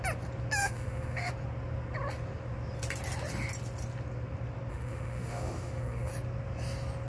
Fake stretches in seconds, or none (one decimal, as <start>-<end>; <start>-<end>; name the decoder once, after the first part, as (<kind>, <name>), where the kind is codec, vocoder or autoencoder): 0.6-1.3 (autoencoder, DAC-VAE); 4.7-6.1